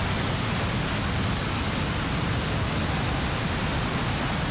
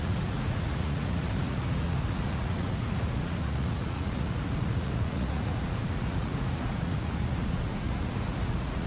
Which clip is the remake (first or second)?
second